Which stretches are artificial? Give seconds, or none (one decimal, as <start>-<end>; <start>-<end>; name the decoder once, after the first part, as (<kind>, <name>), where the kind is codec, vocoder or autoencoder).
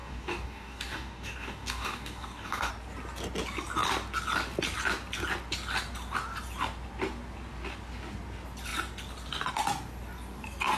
0.0-2.7 (codec, DAC)